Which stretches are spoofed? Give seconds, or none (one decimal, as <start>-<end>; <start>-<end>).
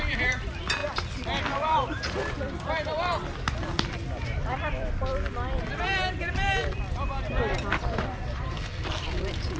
0.0-0.8; 1.4-9.6